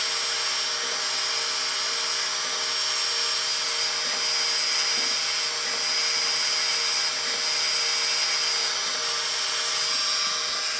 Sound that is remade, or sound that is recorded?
recorded